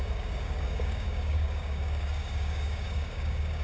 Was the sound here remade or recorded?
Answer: remade